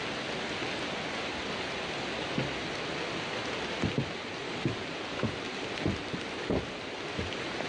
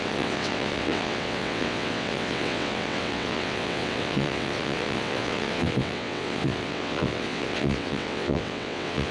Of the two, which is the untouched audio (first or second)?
first